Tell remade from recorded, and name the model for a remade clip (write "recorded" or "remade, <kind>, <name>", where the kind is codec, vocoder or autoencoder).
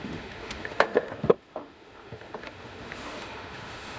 remade, autoencoder, DAC-VAE